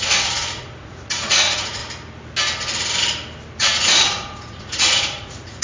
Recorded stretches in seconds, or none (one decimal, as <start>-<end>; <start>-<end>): 1.8-3.6